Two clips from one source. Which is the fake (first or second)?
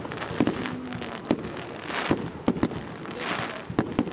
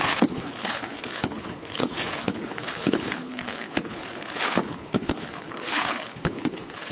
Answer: second